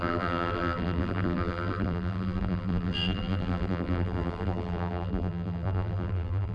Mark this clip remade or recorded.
remade